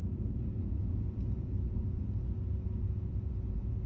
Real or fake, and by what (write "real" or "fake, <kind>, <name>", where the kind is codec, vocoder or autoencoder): fake, vocoder, Vocos